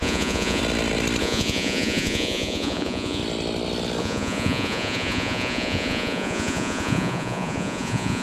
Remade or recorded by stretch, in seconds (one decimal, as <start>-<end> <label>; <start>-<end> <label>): 0.0-0.6 remade; 0.6-1.2 recorded; 1.2-3.2 remade; 3.2-4.0 recorded; 4.0-8.2 remade